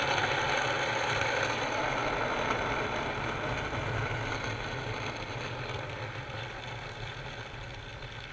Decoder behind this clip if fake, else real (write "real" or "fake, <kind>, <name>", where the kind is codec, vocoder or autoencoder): real